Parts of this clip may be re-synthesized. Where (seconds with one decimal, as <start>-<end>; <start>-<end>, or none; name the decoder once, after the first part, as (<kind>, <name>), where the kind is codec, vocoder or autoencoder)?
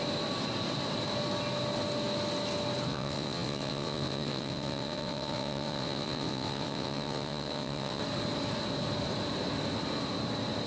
2.9-8.0 (vocoder, WaveNeXt)